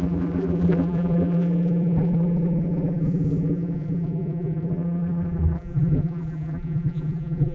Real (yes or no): no